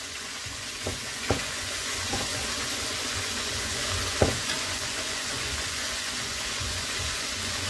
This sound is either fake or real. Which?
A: fake